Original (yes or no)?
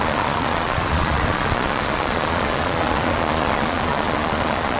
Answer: no